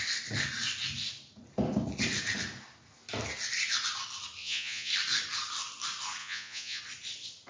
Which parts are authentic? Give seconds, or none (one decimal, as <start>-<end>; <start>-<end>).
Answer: 0.0-4.4; 4.9-6.2; 6.8-7.5